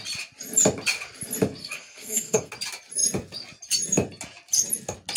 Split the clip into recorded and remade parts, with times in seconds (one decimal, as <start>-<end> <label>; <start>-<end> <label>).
0.0-1.6 recorded; 1.6-2.5 remade; 2.5-5.2 recorded